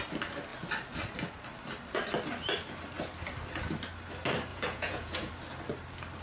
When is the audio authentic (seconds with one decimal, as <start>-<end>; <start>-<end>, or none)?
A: 0.0-4.5; 5.3-6.2